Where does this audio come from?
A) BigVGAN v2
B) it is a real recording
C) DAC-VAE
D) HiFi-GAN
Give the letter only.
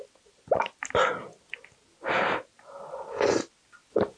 B